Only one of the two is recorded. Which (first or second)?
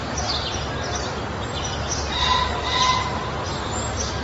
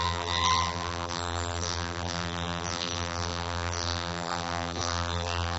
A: first